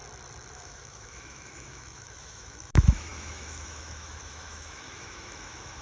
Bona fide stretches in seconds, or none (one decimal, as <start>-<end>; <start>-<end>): 0.0-0.5

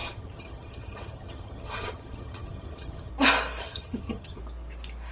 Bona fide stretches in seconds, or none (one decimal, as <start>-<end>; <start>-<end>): 3.1-3.6; 4.4-5.1

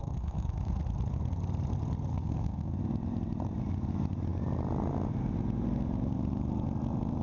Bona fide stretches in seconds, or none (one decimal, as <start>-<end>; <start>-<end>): 0.8-2.1; 2.7-7.2